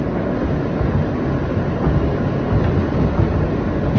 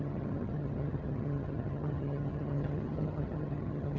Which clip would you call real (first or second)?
first